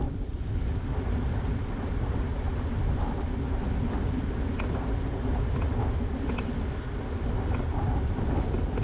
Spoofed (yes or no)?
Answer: no